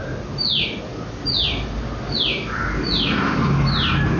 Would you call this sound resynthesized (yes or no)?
no